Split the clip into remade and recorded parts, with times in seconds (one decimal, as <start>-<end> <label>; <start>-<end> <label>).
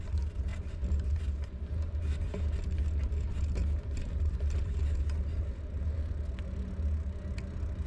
0.0-0.5 recorded; 0.5-2.4 remade; 2.4-3.6 recorded; 3.6-6.1 remade; 6.1-7.9 recorded